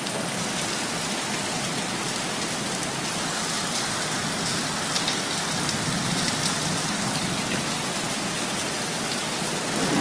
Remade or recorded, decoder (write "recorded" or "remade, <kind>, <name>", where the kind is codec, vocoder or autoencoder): recorded